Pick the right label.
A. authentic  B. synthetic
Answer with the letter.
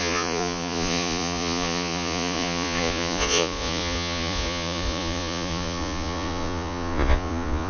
B